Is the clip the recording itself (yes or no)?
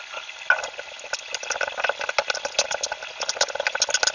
yes